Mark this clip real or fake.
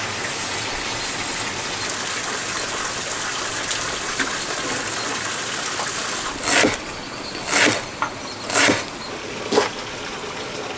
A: real